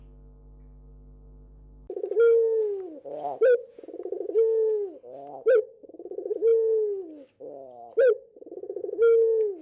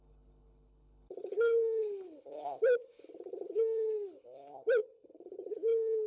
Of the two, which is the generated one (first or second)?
second